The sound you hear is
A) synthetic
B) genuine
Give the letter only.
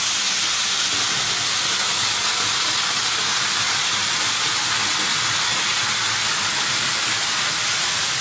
B